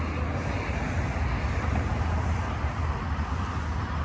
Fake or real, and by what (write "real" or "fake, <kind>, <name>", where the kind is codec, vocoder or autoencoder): real